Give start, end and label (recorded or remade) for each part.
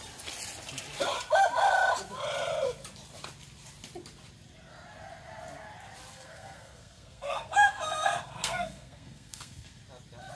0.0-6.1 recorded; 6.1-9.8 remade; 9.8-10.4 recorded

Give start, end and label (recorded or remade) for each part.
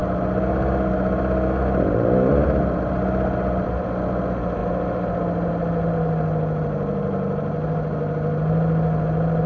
0.0-9.5 recorded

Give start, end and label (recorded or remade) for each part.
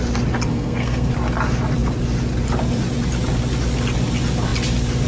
0.0-0.5 recorded; 0.5-1.1 remade; 1.1-5.1 recorded